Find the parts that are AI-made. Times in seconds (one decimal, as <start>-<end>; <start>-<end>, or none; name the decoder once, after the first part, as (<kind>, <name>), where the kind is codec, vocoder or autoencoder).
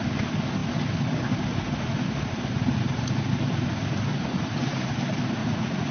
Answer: 5.4-5.9 (vocoder, Vocos)